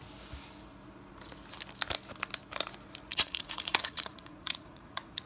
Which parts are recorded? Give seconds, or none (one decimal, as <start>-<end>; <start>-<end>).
0.0-3.1